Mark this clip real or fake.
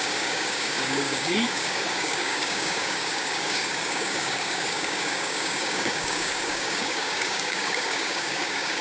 fake